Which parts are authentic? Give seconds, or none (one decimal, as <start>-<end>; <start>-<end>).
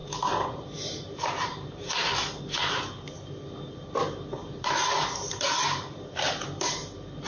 2.4-4.4; 6.7-7.3